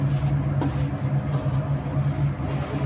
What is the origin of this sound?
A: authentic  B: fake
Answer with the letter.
A